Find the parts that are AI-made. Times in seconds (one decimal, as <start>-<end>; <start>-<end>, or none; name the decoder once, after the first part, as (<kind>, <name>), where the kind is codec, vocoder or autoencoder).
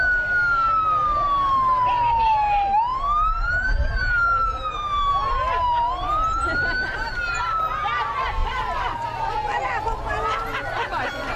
2.9-7.1 (vocoder, BigVGAN v2); 8.4-9.3